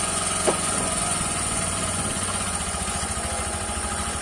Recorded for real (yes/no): no